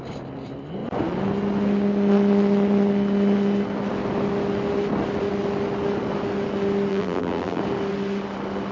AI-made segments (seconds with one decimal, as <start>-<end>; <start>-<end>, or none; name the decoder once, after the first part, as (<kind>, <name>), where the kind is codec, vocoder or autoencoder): 6.9-7.6 (vocoder, BigVGAN v2)